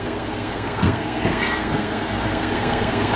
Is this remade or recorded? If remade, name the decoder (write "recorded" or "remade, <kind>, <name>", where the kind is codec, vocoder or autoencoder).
remade, codec, SNAC